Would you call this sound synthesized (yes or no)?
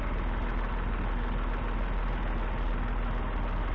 no